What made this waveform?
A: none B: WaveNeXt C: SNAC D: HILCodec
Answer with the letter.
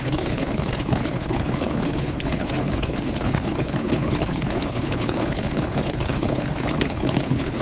D